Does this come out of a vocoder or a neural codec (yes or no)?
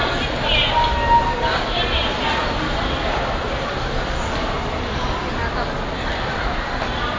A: no